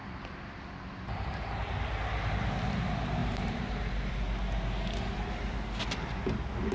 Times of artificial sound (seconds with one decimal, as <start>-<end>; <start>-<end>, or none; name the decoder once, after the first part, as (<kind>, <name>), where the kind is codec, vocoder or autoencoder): 3.2-4.1 (vocoder, BigVGAN v2)